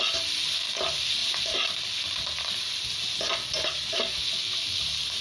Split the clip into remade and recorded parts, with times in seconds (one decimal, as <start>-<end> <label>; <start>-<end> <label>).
0.0-5.2 recorded